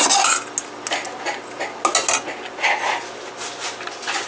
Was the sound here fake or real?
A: real